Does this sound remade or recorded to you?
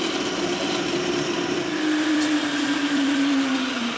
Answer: remade